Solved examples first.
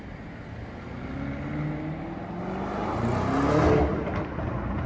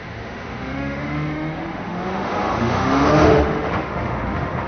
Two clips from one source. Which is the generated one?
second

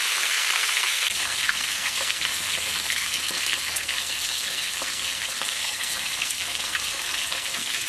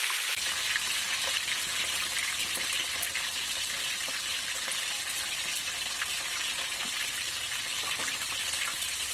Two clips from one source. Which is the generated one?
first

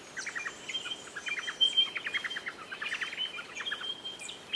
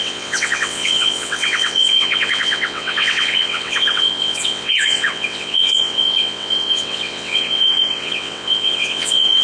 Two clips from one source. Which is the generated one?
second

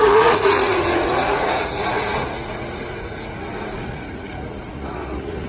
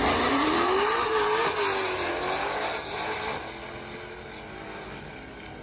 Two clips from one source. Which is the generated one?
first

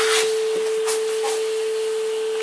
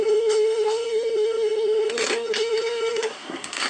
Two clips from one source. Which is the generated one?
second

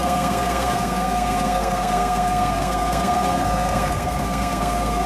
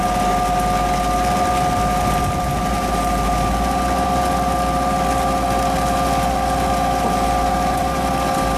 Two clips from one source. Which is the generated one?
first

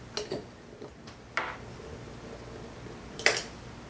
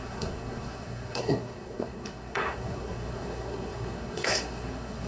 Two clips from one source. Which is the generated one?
second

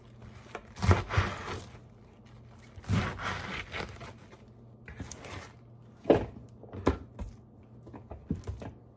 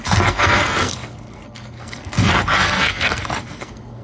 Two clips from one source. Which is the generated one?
second